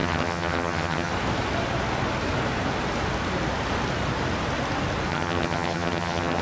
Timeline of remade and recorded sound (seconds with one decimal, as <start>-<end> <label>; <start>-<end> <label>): 0.0-1.1 remade; 1.1-5.1 recorded; 5.1-6.4 remade